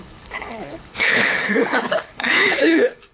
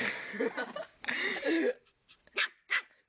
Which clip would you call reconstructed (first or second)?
first